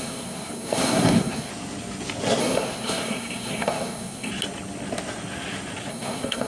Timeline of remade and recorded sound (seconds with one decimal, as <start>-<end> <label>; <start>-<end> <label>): 0.0-1.5 remade; 1.5-2.4 recorded; 2.4-4.3 remade; 4.3-5.9 recorded; 5.9-6.5 remade